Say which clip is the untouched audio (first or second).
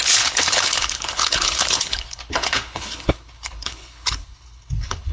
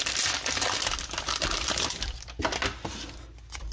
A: second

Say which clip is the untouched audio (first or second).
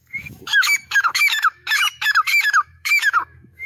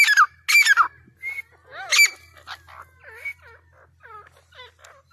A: second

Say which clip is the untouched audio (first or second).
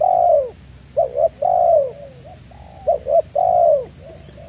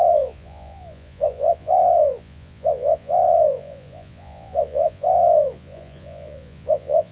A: first